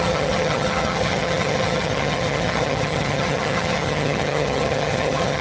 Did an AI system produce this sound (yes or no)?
yes